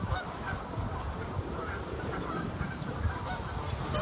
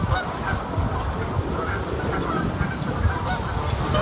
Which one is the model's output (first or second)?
first